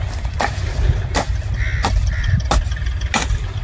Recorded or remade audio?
recorded